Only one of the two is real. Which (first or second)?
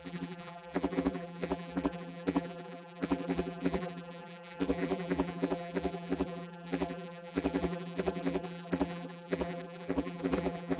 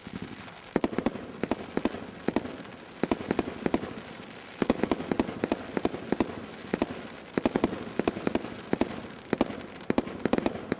second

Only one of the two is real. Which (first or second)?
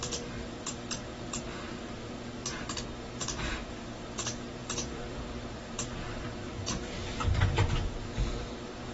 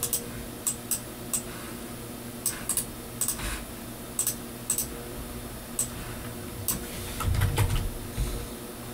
second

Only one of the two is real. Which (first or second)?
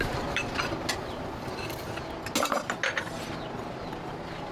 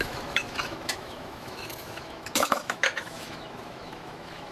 first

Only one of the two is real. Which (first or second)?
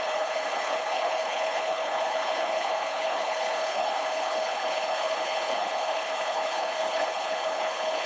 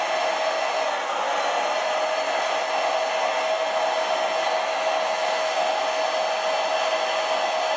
second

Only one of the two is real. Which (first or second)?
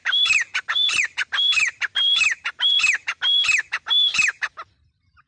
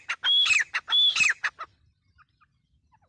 second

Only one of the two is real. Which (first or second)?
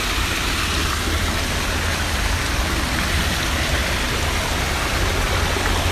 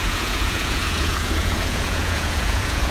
first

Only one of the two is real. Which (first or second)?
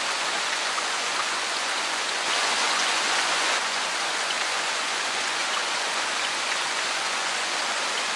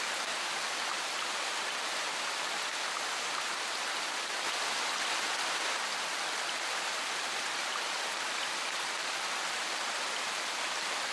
second